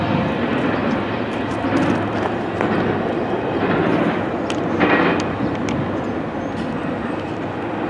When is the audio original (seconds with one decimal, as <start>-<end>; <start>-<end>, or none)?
0.0-0.8; 5.5-7.9